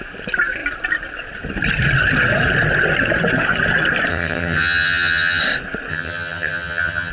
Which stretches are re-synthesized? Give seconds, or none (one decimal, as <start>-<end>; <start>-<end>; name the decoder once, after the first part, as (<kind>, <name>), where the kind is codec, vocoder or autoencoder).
4.1-5.4 (vocoder, HiFi-GAN); 5.9-7.1